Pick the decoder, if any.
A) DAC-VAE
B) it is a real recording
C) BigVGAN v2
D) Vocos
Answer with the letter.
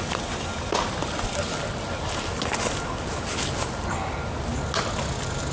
B